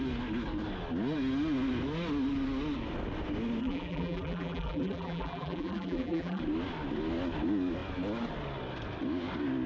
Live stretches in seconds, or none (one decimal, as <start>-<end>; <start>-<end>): 0.0-3.6; 6.4-9.7